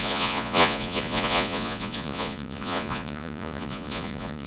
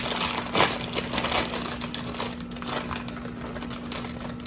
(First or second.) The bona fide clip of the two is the second